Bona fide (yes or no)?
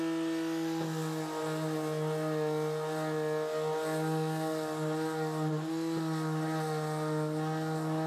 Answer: yes